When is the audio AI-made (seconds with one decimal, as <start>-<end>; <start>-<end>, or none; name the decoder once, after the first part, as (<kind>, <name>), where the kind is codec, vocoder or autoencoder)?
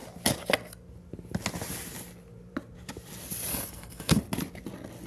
3.5-4.2 (codec, SNAC)